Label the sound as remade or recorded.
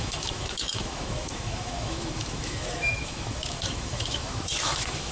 remade